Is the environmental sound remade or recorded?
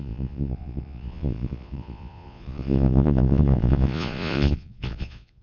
remade